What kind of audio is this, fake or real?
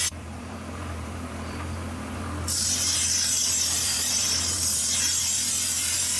fake